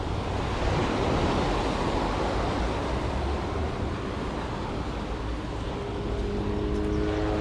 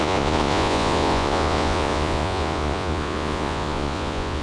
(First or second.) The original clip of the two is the first